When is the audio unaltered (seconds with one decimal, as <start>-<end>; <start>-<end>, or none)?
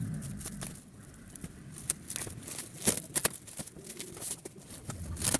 0.0-5.4